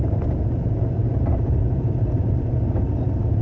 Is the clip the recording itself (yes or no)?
no